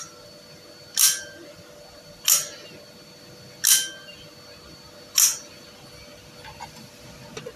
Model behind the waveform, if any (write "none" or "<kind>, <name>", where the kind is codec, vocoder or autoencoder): none